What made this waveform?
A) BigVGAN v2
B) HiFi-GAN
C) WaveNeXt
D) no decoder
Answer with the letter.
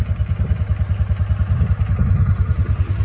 D